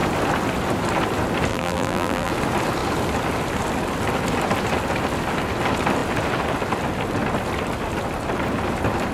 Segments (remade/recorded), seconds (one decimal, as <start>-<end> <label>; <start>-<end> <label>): 0.0-1.5 recorded; 1.5-2.3 remade; 2.3-9.1 recorded